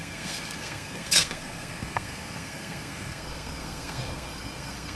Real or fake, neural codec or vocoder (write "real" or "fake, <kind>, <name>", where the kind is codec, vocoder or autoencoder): fake, codec, SNAC